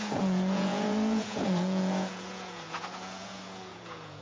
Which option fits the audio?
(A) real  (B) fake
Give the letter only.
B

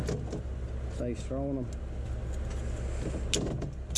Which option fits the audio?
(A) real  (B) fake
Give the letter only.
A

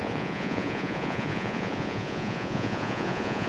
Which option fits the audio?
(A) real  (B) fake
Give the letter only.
B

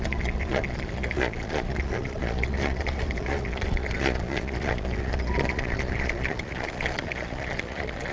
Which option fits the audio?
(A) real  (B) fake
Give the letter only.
B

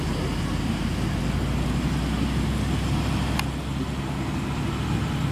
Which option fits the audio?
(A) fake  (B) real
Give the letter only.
B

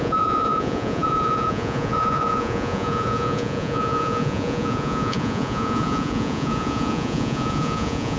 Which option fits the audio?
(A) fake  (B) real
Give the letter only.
A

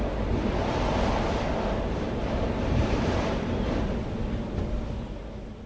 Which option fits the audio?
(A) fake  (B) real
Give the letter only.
B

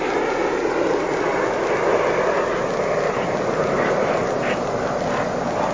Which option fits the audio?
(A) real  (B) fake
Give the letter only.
A